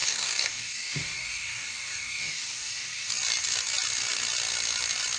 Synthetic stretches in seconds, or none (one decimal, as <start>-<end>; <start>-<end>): 0.0-3.1